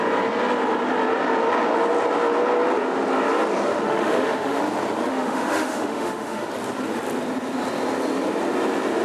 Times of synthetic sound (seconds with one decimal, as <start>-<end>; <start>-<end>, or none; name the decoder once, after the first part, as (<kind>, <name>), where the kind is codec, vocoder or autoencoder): 3.7-4.6 (autoencoder, DAC-VAE); 5.1-6.5